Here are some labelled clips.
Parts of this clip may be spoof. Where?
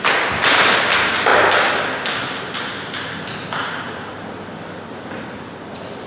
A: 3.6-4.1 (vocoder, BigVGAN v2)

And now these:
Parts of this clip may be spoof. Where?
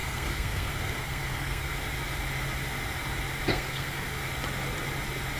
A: 0.0-1.7 (codec, SNAC); 3.5-4.2